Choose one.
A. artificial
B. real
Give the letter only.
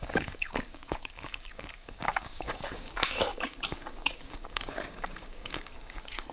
A